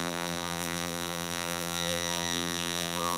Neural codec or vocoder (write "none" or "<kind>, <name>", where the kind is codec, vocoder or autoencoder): vocoder, BigVGAN v2